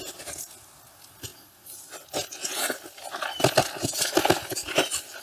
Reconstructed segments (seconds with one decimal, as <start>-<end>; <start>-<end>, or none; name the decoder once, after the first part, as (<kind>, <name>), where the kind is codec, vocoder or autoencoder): none